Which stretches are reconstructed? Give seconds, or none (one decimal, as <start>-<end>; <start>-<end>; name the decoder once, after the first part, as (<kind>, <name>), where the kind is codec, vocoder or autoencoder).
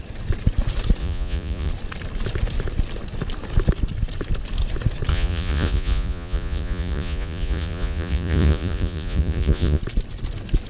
1.0-1.7 (vocoder, Vocos); 5.1-9.8